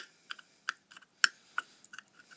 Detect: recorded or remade recorded